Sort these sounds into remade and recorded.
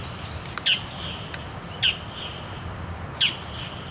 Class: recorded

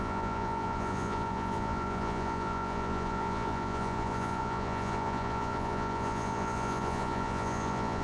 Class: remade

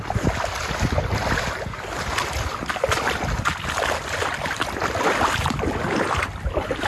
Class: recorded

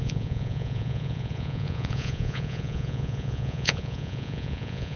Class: remade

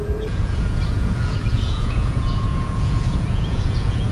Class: remade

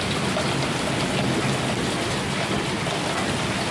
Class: recorded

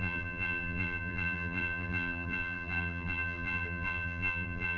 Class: remade